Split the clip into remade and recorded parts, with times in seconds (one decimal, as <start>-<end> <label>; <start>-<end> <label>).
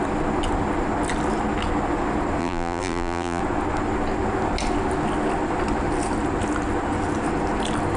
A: 0.0-2.4 recorded; 2.4-3.4 remade; 3.4-8.0 recorded